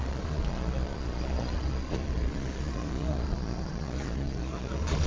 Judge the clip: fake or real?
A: fake